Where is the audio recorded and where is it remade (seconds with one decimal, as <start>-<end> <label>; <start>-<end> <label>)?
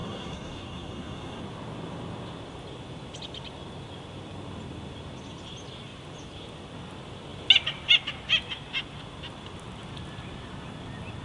0.0-1.4 remade; 1.4-11.2 recorded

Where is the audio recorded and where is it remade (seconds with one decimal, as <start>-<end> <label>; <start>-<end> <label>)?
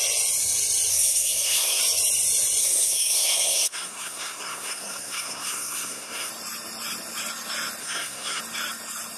0.0-0.9 recorded; 0.9-1.8 remade; 1.8-2.6 recorded; 2.6-6.3 remade; 6.3-7.8 recorded; 7.8-8.4 remade; 8.4-9.2 recorded